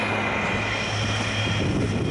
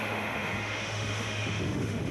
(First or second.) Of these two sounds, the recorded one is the first